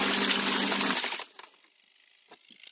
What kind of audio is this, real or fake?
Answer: real